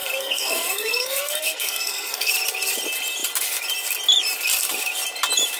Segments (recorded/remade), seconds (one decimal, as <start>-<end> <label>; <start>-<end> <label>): 0.0-2.3 remade; 2.3-5.6 recorded